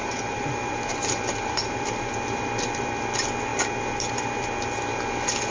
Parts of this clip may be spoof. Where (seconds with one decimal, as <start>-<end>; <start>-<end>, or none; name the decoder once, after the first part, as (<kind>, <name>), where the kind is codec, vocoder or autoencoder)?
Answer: 0.0-2.1 (vocoder, BigVGAN v2)

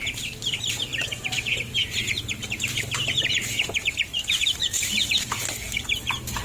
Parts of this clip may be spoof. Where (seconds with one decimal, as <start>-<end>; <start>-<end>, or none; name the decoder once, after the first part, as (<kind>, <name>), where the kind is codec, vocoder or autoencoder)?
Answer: 0.9-2.7 (vocoder, BigVGAN v2); 4.1-5.1